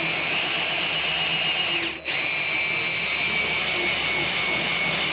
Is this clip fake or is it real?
real